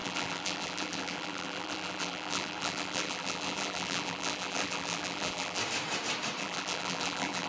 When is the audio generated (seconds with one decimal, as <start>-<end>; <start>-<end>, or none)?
0.0-5.6; 6.4-7.5